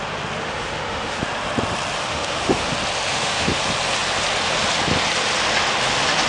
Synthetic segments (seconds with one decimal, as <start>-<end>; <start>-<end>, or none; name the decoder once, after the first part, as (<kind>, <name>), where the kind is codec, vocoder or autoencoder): 0.4-1.2 (autoencoder, DAC-VAE); 2.0-2.7; 3.1-3.6